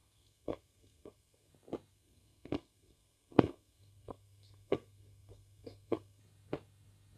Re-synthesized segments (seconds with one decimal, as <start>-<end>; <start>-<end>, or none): 0.0-1.5; 1.9-6.2